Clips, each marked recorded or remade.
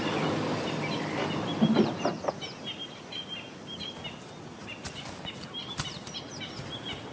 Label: recorded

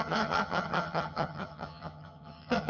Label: remade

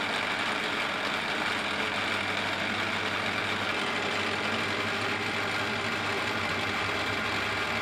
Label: recorded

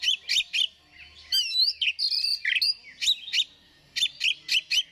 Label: recorded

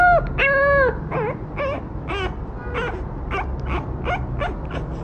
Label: recorded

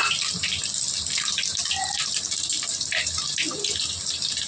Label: recorded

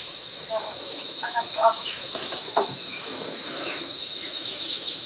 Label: remade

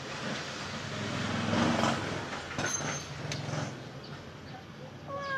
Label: recorded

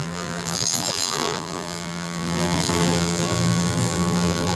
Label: remade